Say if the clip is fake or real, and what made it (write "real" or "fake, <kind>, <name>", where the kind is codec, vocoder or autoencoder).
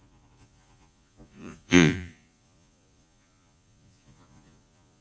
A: fake, vocoder, Vocos